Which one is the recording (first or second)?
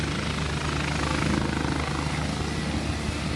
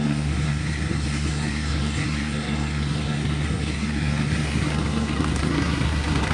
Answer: first